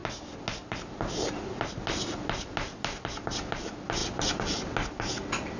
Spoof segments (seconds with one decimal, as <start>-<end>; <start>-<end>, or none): none